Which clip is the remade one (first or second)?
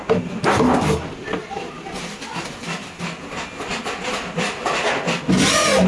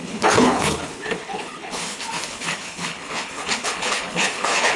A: second